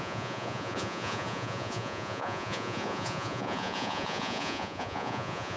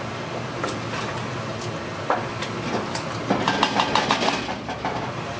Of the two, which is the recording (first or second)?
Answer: second